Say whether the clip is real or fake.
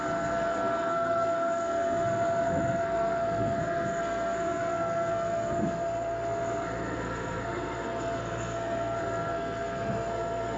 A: fake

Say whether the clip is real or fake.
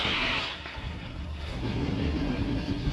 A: fake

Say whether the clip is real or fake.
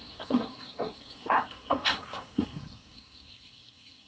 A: fake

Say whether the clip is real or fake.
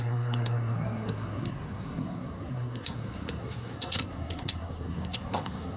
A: fake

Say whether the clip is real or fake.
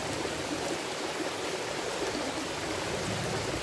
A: real